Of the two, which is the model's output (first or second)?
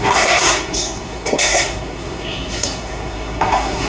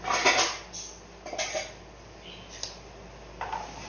first